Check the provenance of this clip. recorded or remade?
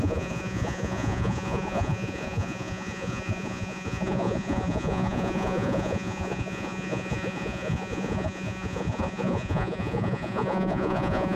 remade